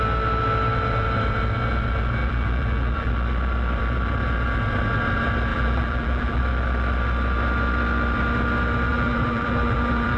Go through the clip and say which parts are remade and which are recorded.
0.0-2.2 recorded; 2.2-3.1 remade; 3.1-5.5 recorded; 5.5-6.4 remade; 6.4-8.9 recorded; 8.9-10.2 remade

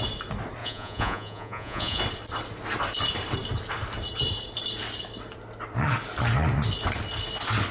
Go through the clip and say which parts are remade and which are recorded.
0.0-0.6 recorded; 0.6-2.0 remade; 2.0-7.7 recorded

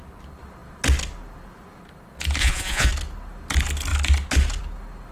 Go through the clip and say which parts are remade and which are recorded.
0.0-2.4 recorded; 2.4-2.9 remade; 2.9-5.1 recorded

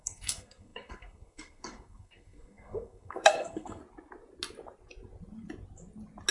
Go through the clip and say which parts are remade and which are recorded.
0.0-3.8 remade; 3.8-6.3 recorded

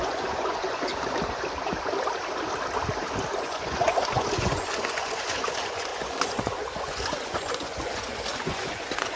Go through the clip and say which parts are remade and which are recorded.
0.0-0.9 remade; 0.9-3.3 recorded; 3.3-9.2 remade

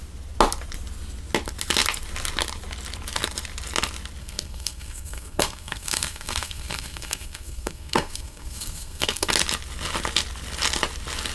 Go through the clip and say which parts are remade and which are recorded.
0.0-4.2 recorded; 4.2-9.3 remade; 9.3-11.3 recorded